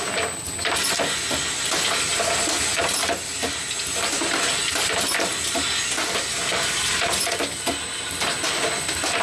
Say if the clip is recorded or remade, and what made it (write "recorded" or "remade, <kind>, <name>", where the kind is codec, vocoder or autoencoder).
recorded